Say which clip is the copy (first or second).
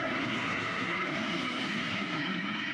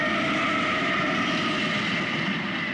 first